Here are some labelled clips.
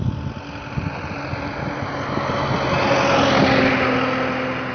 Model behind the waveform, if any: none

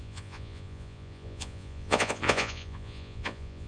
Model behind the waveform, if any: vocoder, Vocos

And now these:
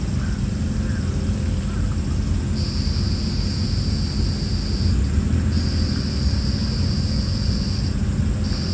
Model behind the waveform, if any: none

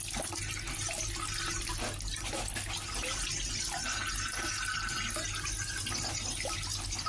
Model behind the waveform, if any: none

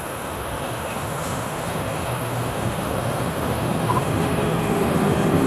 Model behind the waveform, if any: autoencoder, DAC-VAE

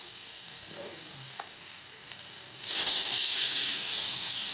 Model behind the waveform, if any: codec, DAC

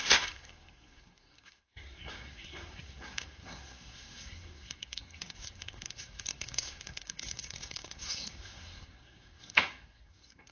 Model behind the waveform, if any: codec, SNAC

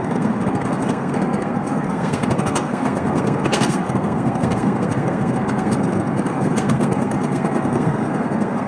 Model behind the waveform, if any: codec, SNAC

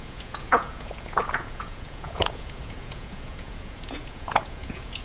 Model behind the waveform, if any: vocoder, Vocos